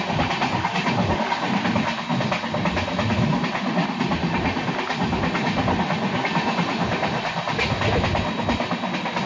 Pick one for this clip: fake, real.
real